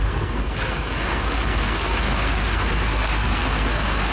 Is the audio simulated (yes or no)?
yes